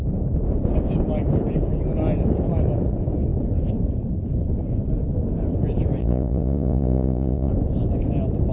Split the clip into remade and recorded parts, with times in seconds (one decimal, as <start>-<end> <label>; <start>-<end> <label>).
0.0-6.0 recorded; 6.0-7.5 remade; 7.5-8.5 recorded